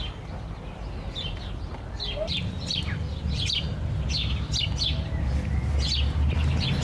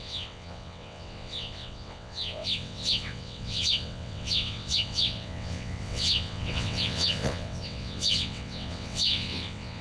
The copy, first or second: second